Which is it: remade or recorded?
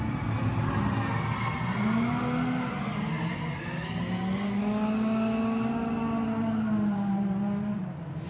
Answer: recorded